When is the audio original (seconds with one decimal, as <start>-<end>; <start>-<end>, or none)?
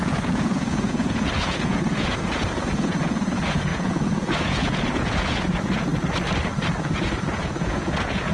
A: 5.9-6.8